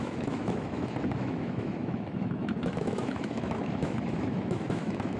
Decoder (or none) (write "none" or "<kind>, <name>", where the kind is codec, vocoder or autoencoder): autoencoder, DAC-VAE